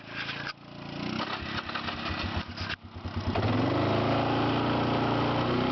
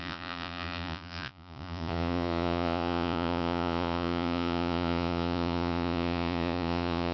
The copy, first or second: second